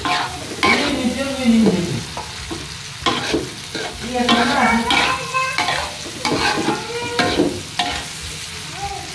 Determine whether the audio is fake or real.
real